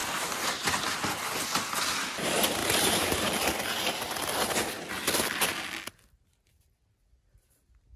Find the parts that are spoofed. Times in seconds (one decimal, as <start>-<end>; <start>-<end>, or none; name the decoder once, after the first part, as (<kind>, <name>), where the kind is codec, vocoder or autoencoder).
2.6-3.3 (vocoder, BigVGAN v2); 4.6-5.5